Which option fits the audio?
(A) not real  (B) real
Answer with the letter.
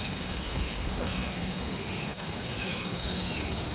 A